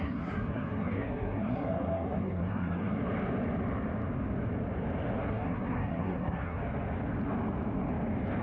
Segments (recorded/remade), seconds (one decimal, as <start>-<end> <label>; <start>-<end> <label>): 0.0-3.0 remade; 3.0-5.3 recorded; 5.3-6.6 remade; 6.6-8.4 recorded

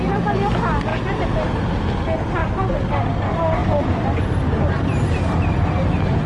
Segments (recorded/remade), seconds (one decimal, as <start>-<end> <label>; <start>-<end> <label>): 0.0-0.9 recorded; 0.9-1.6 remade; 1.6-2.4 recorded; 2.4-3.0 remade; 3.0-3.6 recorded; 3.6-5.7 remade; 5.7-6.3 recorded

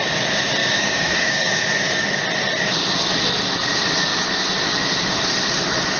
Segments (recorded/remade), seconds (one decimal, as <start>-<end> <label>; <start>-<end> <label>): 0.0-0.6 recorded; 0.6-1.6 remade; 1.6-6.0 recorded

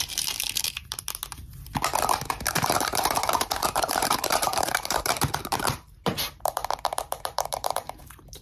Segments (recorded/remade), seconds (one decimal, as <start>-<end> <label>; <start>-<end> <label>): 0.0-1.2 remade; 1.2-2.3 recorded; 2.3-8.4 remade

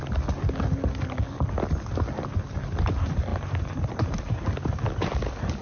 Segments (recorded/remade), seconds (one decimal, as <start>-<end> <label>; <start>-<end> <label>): 0.0-3.3 recorded; 3.3-4.4 remade; 4.4-5.6 recorded

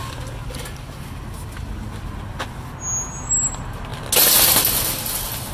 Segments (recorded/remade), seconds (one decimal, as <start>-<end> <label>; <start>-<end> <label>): 0.0-5.5 recorded

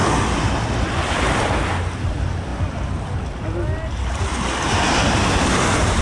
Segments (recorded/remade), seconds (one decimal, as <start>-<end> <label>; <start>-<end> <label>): 0.0-6.0 recorded

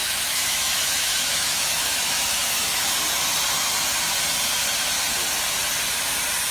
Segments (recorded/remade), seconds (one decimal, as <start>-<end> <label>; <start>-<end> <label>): 0.0-3.0 remade; 3.0-6.5 recorded